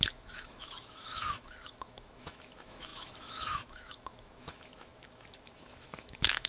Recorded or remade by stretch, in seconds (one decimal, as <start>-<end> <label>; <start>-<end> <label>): 0.0-6.5 remade

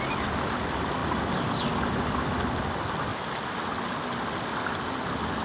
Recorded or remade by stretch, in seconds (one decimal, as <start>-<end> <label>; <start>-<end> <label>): 0.0-5.4 recorded